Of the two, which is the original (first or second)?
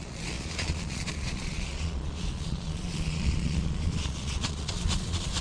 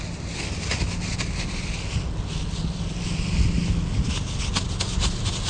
second